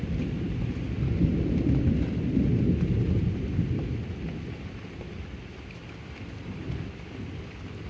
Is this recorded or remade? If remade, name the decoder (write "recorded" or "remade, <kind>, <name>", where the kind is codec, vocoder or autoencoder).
recorded